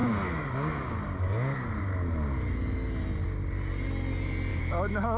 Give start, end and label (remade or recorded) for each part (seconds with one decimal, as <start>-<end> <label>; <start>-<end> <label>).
0.0-4.5 recorded; 4.5-5.2 remade